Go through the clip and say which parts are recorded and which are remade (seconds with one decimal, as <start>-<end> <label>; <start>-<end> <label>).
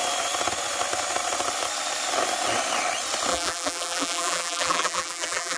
0.0-3.3 recorded; 3.3-5.6 remade